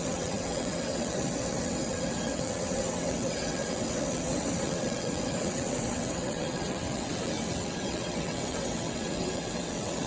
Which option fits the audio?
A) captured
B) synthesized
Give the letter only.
B